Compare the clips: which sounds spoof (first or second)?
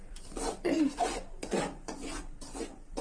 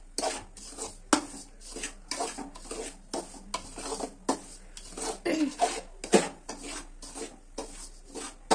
first